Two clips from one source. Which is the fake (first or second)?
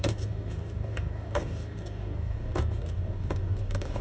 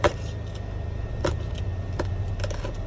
first